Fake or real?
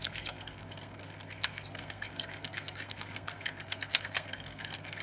fake